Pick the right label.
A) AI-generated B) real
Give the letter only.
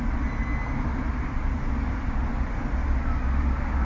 B